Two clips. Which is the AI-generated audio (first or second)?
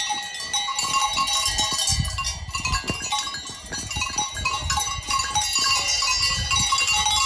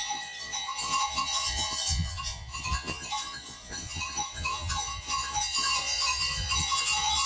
second